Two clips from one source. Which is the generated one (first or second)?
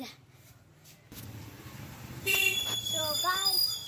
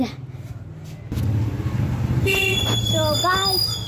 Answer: first